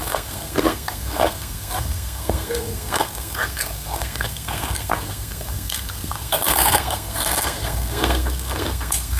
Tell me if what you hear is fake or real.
fake